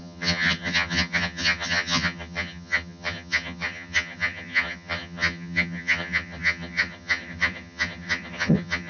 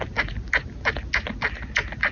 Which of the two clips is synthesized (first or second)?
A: first